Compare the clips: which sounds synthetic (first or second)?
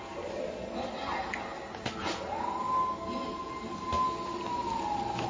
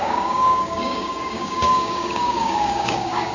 second